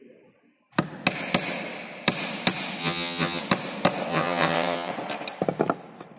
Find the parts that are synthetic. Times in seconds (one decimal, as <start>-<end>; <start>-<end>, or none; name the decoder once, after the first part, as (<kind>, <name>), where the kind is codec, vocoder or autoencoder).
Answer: 2.8-3.4 (vocoder, HiFi-GAN); 4.1-4.9